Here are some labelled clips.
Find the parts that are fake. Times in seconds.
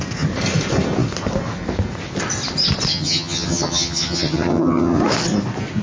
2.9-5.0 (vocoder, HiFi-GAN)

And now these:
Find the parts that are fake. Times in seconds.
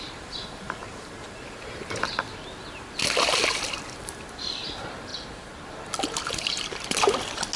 none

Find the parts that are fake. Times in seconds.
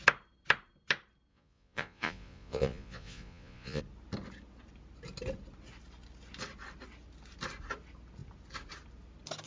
1.3-3.8 (vocoder, Vocos)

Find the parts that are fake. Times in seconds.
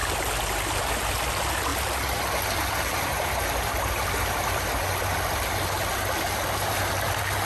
none